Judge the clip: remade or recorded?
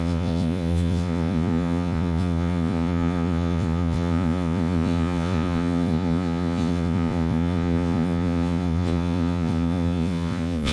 remade